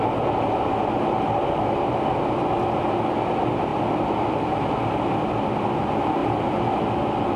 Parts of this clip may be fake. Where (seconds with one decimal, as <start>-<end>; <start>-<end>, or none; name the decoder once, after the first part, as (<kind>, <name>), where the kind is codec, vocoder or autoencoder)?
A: 3.7-4.2 (vocoder, BigVGAN v2); 6.2-7.4

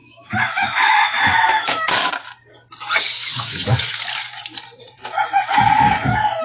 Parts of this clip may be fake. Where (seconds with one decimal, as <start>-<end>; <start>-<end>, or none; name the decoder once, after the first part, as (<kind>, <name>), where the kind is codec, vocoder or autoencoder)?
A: 0.0-2.1 (autoencoder, DAC-VAE); 3.3-4.0